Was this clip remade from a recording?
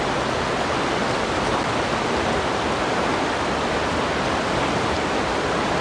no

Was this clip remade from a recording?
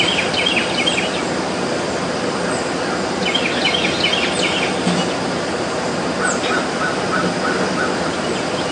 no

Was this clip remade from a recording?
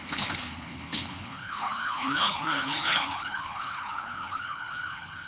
yes